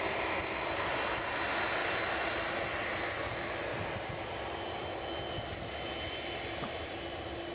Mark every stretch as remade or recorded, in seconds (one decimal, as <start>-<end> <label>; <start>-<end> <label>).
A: 0.0-7.5 recorded